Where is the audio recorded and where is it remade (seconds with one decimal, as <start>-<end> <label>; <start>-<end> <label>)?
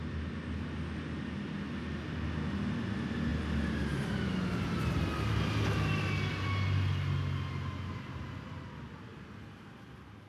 0.0-10.3 recorded